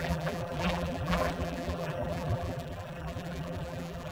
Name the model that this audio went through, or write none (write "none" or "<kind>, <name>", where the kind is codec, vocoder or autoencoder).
vocoder, BigVGAN v2